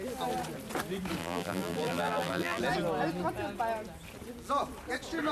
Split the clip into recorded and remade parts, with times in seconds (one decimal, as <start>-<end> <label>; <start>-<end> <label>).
0.0-1.2 recorded; 1.2-2.6 remade; 2.6-5.3 recorded